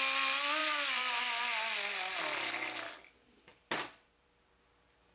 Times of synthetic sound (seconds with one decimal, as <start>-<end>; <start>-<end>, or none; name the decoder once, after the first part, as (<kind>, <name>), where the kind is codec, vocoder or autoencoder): 0.6-1.2 (vocoder, BigVGAN v2); 3.5-4.4